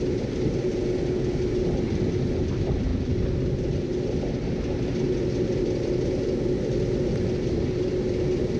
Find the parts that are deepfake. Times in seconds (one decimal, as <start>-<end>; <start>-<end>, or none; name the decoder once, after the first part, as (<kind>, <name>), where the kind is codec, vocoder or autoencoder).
none